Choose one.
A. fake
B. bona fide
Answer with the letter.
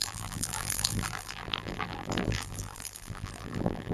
A